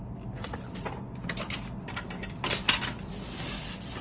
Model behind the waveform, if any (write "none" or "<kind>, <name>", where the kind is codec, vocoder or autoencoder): none